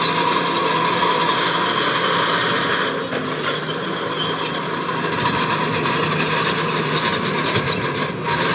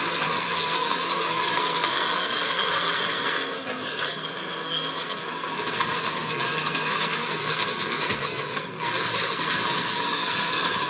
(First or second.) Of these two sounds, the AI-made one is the second